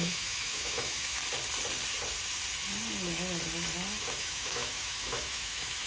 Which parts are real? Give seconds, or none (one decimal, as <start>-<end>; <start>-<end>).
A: 1.2-4.0